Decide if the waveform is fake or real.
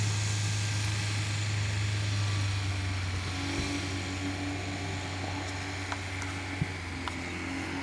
real